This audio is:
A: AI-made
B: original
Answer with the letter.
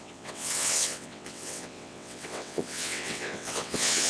A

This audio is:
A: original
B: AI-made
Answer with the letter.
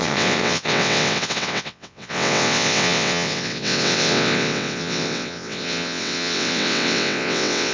B